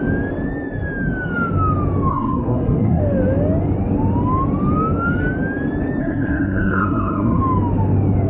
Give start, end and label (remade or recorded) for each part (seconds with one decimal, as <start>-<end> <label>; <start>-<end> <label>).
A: 0.0-2.1 recorded; 2.1-3.0 remade; 3.0-6.0 recorded; 6.0-7.4 remade; 7.4-8.3 recorded